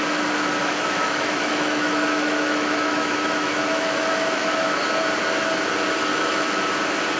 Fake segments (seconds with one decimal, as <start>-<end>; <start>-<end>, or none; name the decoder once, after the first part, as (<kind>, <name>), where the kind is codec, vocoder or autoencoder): 0.6-4.8 (autoencoder, DAC-VAE); 6.1-6.6